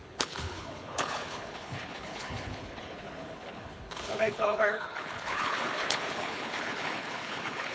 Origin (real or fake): fake